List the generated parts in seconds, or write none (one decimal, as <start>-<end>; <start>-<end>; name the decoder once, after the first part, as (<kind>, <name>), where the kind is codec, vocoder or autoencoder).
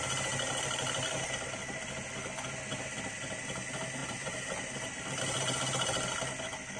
4.0-5.0 (vocoder, BigVGAN v2)